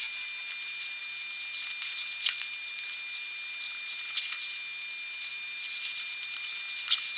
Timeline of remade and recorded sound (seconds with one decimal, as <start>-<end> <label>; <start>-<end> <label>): 0.0-7.2 recorded